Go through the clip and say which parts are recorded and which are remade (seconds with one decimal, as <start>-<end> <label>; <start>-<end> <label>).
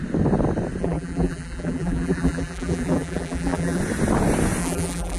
0.0-0.8 recorded; 0.8-3.8 remade; 3.8-4.6 recorded; 4.6-5.2 remade